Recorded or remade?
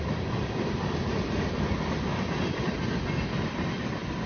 recorded